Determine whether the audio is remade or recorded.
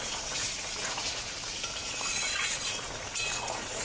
remade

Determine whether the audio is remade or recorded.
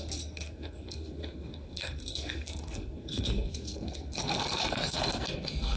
remade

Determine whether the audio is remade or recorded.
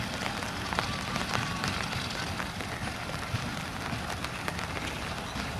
recorded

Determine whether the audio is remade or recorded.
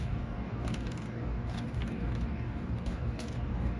remade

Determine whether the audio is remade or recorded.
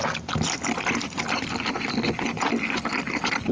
recorded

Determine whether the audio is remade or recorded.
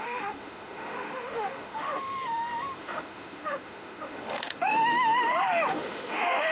remade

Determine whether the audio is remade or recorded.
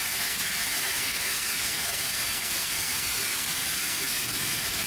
remade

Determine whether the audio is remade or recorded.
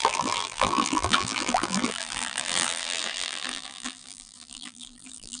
remade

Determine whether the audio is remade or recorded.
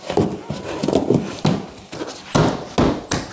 recorded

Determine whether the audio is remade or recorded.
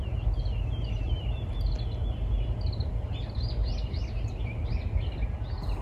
recorded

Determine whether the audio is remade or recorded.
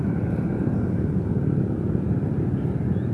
recorded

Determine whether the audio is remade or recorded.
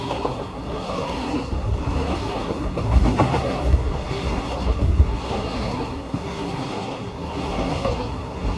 remade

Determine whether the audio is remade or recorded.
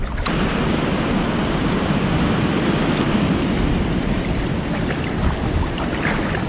remade